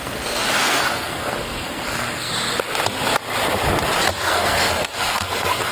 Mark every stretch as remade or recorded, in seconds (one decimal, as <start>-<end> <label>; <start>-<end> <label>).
0.0-2.3 remade; 2.3-4.2 recorded; 4.2-5.7 remade